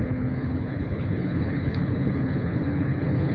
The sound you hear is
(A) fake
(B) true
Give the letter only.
A